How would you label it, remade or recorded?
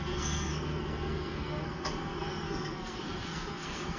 remade